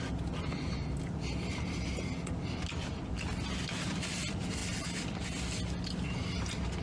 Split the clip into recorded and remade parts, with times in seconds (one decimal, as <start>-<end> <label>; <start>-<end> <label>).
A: 0.0-6.8 recorded